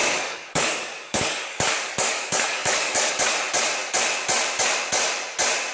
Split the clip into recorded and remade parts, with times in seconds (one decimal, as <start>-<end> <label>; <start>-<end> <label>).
0.0-3.1 remade; 3.1-5.7 recorded